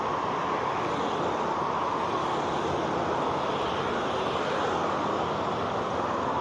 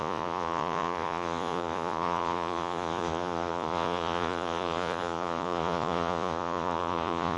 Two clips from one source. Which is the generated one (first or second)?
second